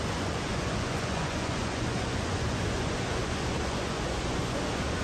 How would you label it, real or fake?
fake